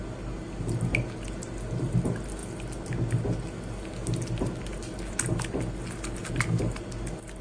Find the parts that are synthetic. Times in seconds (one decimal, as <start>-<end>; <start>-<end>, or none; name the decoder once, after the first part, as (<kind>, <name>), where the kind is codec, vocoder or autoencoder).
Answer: none